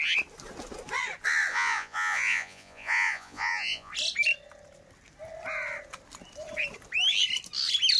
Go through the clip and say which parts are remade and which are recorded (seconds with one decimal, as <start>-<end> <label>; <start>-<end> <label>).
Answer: 0.0-1.5 recorded; 1.5-3.9 remade; 3.9-8.0 recorded